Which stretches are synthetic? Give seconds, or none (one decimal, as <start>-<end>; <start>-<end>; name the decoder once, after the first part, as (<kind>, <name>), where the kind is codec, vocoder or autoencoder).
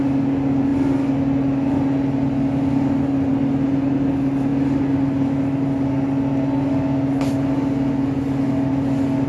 none